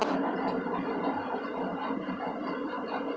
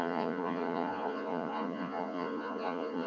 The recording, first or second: first